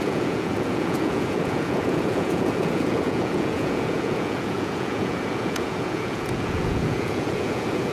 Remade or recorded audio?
remade